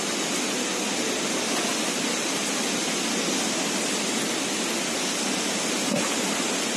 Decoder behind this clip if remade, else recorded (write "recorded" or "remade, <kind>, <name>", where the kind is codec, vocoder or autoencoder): recorded